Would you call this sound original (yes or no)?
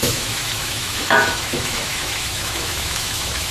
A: no